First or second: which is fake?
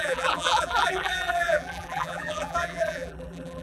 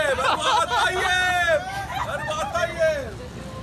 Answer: first